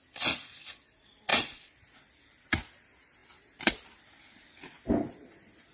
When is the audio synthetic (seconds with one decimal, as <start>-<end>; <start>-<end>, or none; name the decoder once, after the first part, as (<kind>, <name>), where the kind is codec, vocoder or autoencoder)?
1.3-2.8 (vocoder, BigVGAN v2)